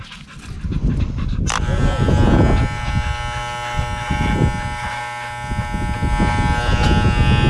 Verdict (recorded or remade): recorded